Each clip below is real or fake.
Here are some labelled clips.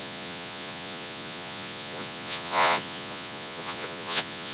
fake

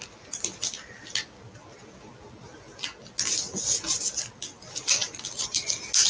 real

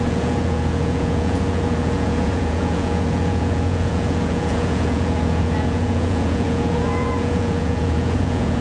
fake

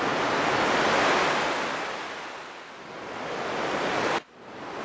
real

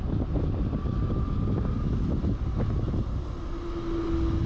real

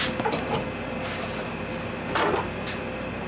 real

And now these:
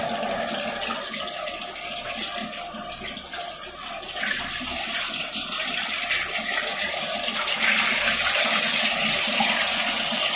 real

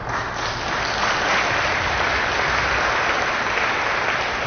real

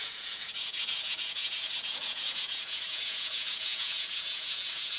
fake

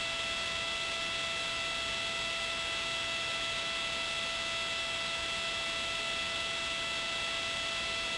real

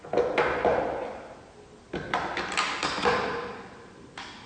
real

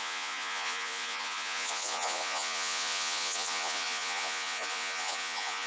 fake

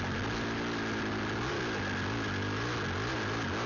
real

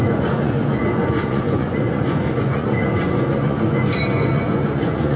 fake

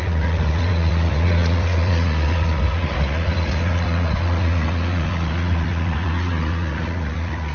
fake